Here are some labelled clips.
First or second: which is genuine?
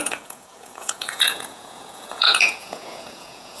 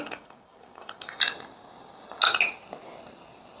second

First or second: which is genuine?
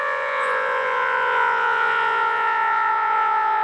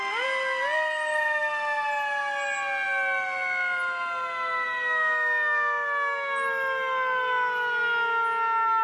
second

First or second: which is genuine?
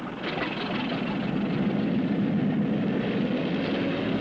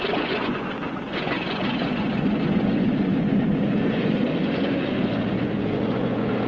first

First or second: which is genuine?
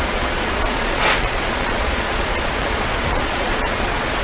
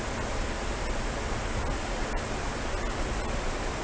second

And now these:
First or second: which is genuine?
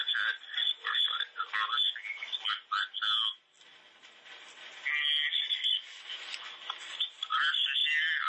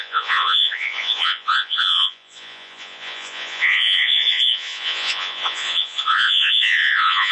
first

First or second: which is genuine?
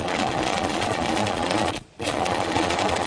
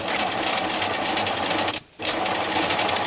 second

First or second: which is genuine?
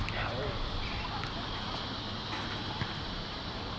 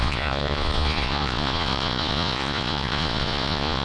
first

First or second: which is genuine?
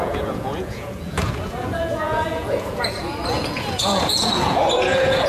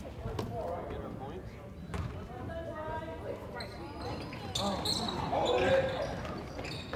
second